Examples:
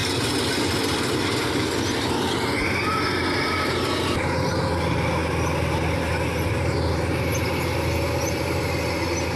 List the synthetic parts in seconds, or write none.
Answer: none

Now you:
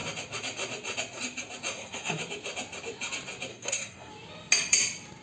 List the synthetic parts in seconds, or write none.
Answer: 1.7-2.2; 3.5-4.1

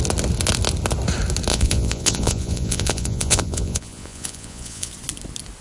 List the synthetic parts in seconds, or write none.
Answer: 1.5-4.9